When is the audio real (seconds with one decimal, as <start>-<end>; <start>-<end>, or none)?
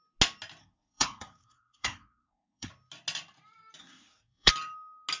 0.0-0.6; 2.7-3.8; 4.5-5.2